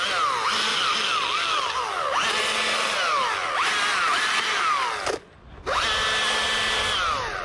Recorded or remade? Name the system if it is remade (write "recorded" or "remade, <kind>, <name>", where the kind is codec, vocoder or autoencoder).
recorded